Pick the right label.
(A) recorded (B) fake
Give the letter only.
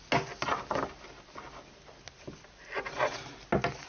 A